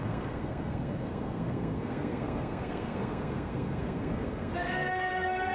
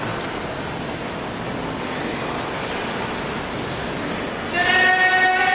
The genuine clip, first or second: second